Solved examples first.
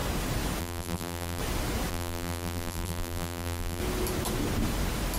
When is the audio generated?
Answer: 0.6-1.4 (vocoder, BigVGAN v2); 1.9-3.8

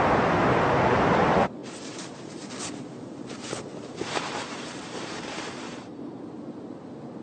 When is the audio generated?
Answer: 3.9-6.2 (vocoder, BigVGAN v2)

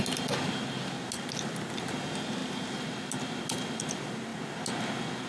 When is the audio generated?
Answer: none

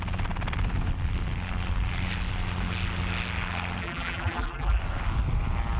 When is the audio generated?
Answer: 3.8-4.8 (vocoder, BigVGAN v2)

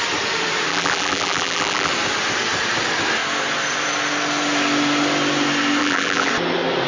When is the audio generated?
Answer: 0.7-1.9 (vocoder, BigVGAN v2); 5.8-6.3

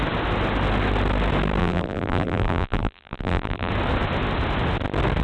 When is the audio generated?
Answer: 1.6-3.7 (vocoder, BigVGAN v2)